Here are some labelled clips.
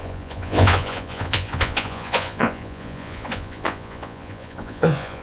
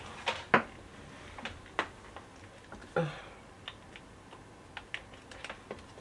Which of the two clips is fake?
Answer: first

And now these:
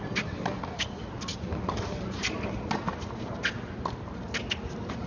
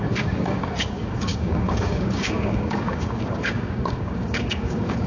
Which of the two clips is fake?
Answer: second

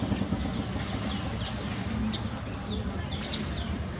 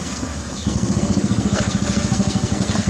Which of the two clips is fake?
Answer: second